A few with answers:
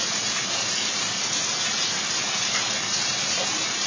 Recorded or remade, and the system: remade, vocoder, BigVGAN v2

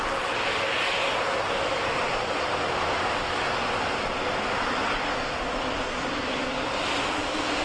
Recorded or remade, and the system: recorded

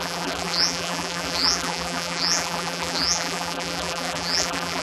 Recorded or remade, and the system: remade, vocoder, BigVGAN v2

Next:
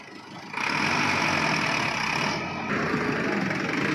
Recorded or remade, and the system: recorded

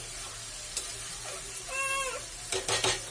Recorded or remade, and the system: recorded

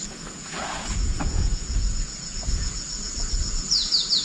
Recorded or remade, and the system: remade, vocoder, Vocos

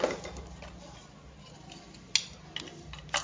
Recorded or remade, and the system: recorded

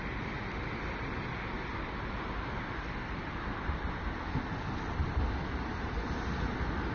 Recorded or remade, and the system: recorded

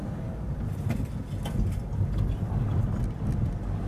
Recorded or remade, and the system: recorded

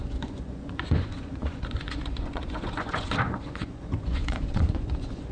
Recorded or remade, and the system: remade, vocoder, Vocos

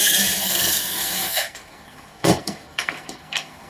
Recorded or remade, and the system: remade, codec, SNAC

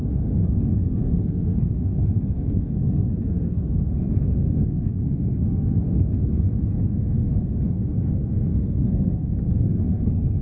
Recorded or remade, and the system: remade, codec, SNAC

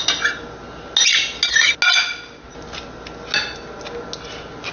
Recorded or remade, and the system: recorded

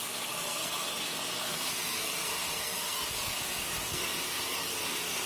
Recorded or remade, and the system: remade, codec, SNAC